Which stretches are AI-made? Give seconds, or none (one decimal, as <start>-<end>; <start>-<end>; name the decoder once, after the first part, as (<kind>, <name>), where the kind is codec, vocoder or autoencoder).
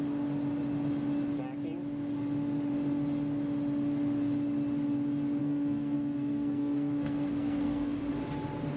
5.4-8.0 (codec, SNAC)